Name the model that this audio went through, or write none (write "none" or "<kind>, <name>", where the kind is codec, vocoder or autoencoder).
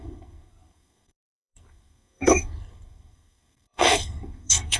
codec, SNAC